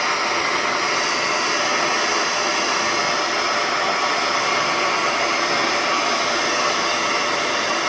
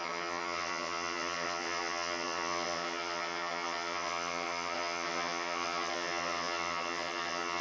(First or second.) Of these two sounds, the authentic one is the first